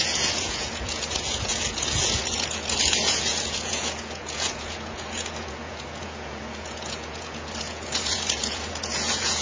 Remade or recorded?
remade